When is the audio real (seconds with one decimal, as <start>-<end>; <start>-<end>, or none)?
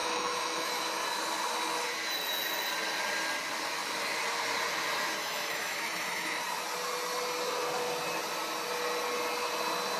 1.0-5.2; 6.4-10.0